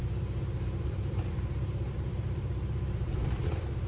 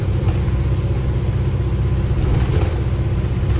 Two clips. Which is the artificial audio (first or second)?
first